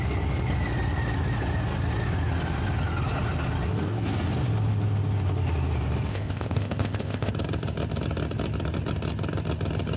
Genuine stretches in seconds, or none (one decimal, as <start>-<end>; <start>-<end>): 0.0-6.1; 7.3-10.0